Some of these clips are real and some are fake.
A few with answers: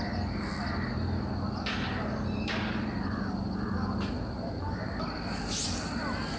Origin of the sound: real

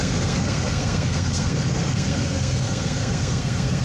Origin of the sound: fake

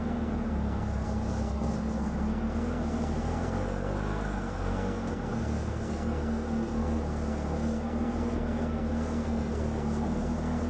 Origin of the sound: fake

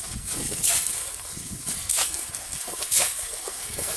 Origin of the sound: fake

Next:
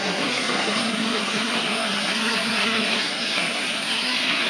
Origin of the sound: fake